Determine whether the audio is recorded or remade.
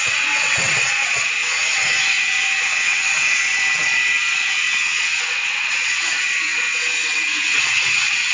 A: remade